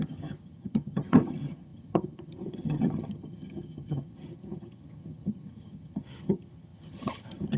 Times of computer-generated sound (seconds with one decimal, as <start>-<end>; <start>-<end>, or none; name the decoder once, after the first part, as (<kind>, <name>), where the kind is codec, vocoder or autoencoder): 0.0-7.6 (vocoder, HiFi-GAN)